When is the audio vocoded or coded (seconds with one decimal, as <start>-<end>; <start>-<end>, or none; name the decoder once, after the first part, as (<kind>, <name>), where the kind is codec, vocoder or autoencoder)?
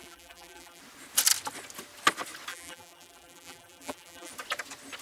0.0-0.8 (vocoder, BigVGAN v2); 2.5-4.3